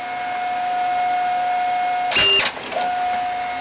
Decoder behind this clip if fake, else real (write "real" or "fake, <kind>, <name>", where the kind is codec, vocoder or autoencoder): real